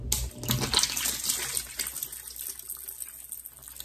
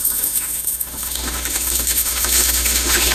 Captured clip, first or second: first